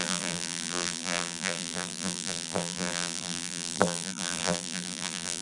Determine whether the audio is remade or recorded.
remade